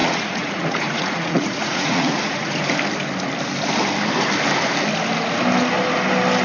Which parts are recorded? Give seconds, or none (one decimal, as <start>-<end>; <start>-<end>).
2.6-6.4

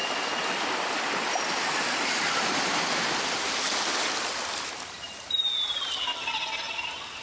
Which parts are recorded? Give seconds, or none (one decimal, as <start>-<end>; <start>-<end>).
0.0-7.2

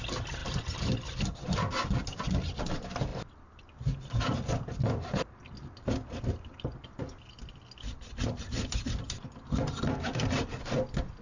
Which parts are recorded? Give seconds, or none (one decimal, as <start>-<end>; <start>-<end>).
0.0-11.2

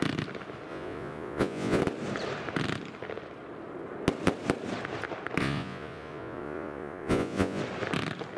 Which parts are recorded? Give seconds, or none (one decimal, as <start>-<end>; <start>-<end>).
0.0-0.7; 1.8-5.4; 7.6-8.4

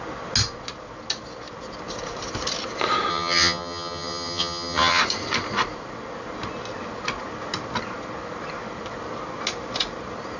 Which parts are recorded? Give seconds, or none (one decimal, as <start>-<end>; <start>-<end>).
0.0-3.1; 5.0-10.4

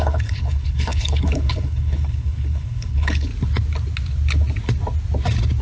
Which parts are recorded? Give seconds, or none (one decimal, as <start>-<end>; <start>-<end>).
3.3-5.6

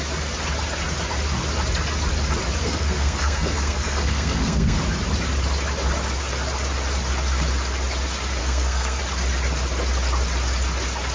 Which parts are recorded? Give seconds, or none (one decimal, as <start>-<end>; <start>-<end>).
0.0-2.6; 4.8-8.4; 9.0-11.1